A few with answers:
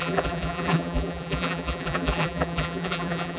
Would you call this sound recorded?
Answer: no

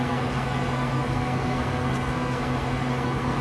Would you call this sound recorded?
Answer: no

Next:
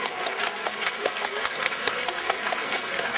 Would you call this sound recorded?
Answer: no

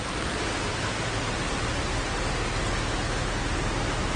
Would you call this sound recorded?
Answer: yes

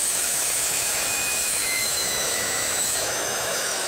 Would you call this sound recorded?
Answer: no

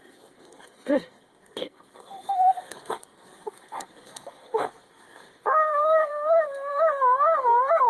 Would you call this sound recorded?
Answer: no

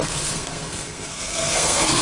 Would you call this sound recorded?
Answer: no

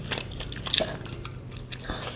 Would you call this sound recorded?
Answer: yes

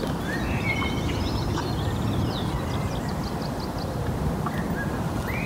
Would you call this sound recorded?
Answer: yes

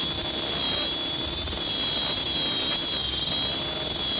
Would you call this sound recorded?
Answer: yes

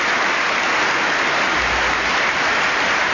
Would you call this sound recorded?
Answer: yes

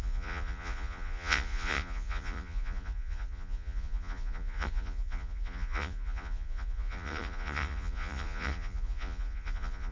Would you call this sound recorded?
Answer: no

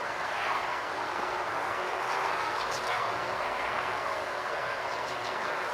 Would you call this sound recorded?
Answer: no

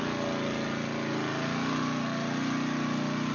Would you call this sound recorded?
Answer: yes